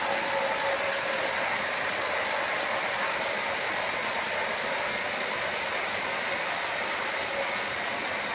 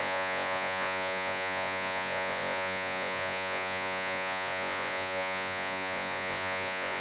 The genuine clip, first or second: first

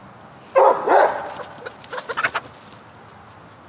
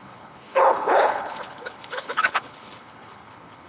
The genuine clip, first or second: first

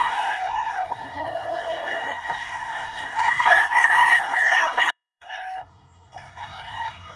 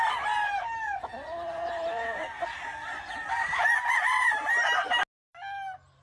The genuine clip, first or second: second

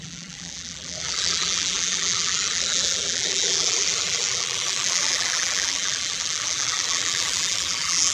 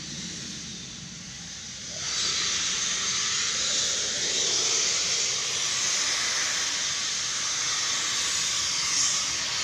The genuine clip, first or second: second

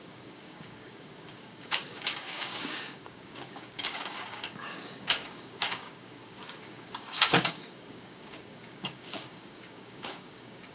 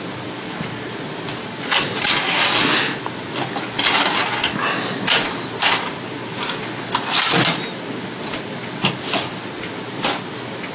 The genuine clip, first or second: second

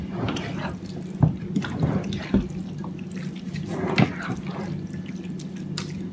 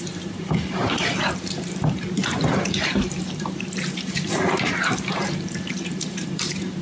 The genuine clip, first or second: first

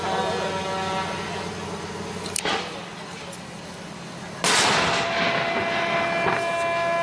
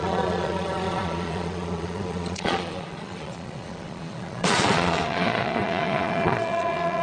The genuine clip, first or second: first